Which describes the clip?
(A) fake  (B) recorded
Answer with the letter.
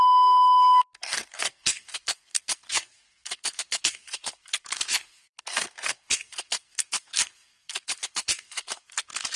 A